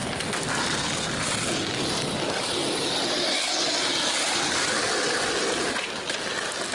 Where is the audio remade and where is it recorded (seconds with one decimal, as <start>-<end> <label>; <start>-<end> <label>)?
0.0-6.7 recorded